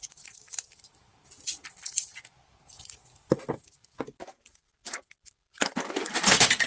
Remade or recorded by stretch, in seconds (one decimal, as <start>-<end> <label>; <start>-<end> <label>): 0.0-6.7 recorded